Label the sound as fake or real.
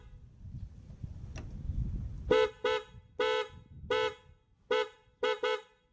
real